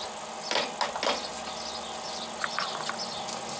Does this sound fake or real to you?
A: real